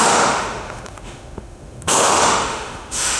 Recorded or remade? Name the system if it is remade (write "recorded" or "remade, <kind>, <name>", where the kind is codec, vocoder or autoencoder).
remade, autoencoder, DAC-VAE